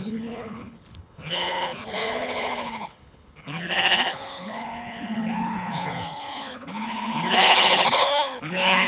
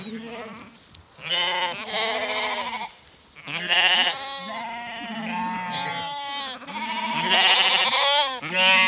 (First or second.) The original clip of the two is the second